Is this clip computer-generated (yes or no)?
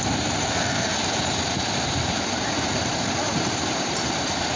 yes